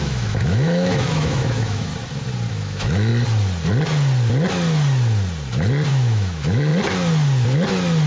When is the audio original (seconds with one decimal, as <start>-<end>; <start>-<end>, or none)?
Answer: 1.9-2.5; 3.1-5.9; 6.7-8.1